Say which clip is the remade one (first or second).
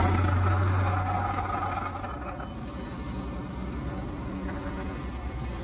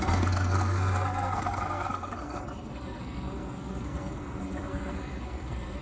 second